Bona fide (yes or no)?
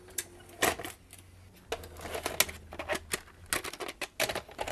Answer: yes